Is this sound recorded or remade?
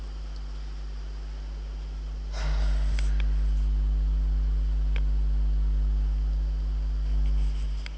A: recorded